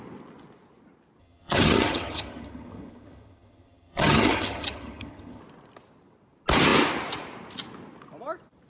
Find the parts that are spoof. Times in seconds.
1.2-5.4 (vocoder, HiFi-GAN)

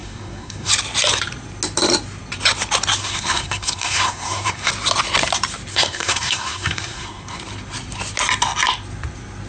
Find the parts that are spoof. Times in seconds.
0.0-0.7 (codec, SNAC); 3.0-4.7; 5.7-7.4

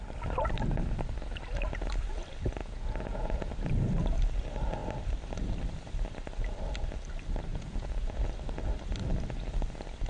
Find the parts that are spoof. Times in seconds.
2.6-3.5 (vocoder, Vocos); 7.5-8.3

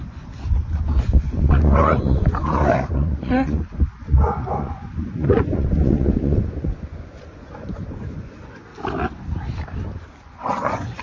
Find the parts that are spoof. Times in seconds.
0.0-8.7 (vocoder, Vocos); 10.2-11.0